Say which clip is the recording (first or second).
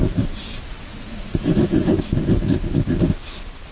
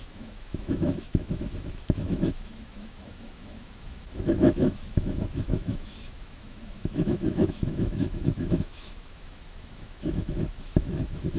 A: first